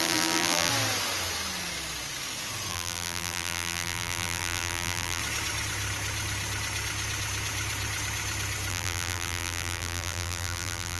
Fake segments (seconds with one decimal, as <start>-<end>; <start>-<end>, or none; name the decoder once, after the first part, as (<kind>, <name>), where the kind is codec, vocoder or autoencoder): 0.0-0.7 (vocoder, BigVGAN v2); 2.7-5.2; 8.7-11.0